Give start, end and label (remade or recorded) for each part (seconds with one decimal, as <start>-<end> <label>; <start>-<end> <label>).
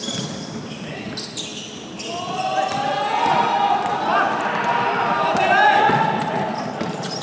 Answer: 0.0-7.2 recorded